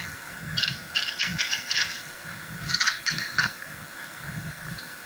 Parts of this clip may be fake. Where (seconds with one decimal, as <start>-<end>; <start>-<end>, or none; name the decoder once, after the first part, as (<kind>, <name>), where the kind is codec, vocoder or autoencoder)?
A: 0.0-5.1 (codec, SNAC)